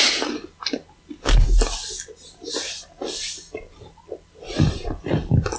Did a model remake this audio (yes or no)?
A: no